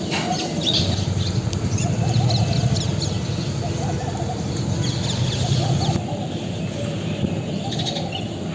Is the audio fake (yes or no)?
no